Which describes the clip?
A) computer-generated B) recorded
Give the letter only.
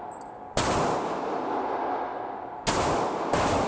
B